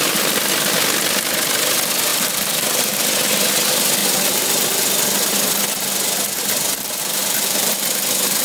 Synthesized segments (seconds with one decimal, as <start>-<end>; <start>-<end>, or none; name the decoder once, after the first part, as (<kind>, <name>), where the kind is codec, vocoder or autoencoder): 2.1-2.8 (vocoder, BigVGAN v2); 4.0-5.3; 7.2-7.9